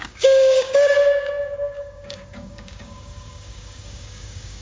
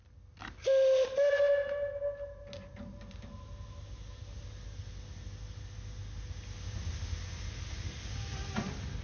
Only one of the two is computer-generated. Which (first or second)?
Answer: first